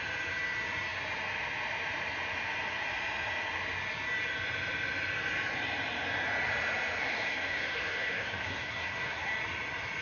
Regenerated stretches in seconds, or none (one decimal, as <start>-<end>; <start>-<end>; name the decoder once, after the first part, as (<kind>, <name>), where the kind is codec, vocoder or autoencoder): 7.0-9.3 (codec, SNAC)